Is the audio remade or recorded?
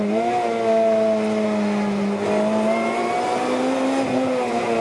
recorded